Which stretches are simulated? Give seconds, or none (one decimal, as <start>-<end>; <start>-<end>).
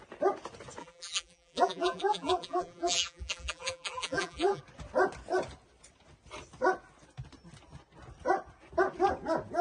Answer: 0.8-4.6